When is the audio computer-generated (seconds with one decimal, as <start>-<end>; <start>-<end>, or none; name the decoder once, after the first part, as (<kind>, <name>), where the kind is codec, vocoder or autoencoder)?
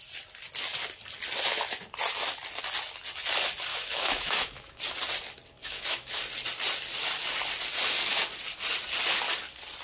3.7-4.8 (autoencoder, DAC-VAE); 5.6-6.2